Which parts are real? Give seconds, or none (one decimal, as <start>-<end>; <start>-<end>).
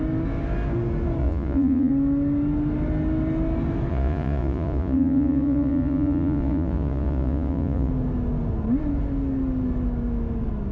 0.0-1.2; 1.9-3.9; 7.9-10.7